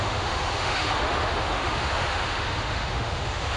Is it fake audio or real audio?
fake